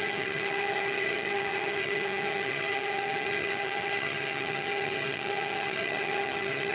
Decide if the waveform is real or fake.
fake